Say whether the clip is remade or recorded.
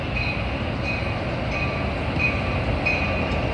recorded